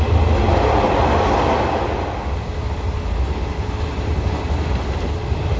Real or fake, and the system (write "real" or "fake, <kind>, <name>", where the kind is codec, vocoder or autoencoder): real